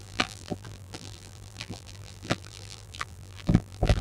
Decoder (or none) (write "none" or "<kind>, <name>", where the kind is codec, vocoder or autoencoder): vocoder, BigVGAN v2